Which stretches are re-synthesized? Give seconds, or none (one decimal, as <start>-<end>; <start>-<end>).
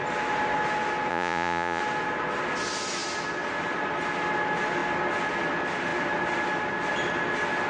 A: 1.1-1.8